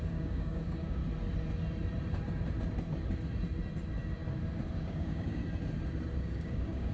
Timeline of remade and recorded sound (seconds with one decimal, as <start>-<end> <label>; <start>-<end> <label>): 0.0-1.0 remade; 1.0-4.7 recorded; 4.7-5.4 remade; 5.4-6.2 recorded; 6.2-6.9 remade